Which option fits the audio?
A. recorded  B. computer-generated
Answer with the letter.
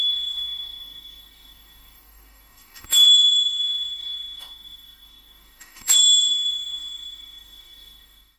B